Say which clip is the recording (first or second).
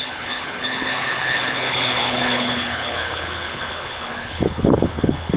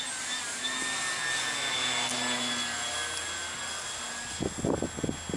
second